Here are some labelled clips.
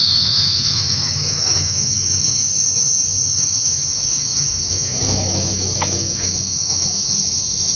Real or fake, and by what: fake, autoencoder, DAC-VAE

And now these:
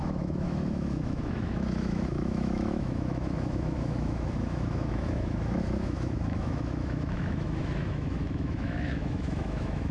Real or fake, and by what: fake, autoencoder, DAC-VAE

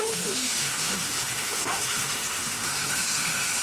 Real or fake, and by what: fake, autoencoder, DAC-VAE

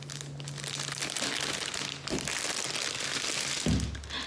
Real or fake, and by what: real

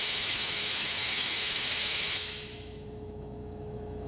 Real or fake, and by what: fake, autoencoder, DAC-VAE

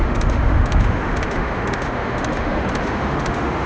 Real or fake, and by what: fake, autoencoder, DAC-VAE